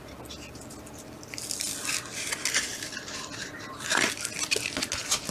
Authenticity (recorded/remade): recorded